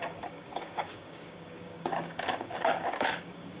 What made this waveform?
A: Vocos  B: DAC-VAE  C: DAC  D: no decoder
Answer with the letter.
C